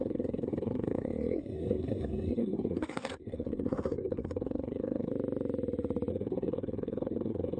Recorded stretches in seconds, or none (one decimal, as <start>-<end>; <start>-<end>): 5.1-6.1